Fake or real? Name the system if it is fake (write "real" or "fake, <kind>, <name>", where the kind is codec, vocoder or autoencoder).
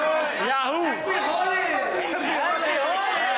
real